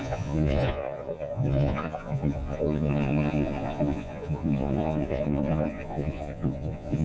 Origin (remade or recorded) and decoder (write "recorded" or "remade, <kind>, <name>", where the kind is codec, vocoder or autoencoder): remade, vocoder, Vocos